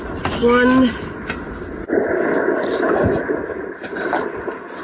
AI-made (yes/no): no